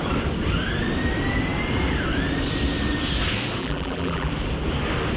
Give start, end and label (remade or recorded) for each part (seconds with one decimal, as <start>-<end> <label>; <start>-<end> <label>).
0.0-3.6 recorded; 3.6-4.3 remade; 4.3-5.2 recorded